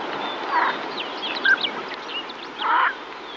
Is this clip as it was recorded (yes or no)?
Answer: yes